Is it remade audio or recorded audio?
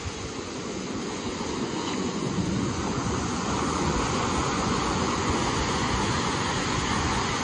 remade